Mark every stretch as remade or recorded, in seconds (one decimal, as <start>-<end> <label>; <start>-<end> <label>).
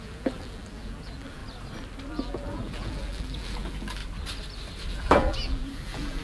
0.0-1.4 remade; 1.4-2.1 recorded; 2.1-4.0 remade; 4.0-4.9 recorded; 4.9-6.2 remade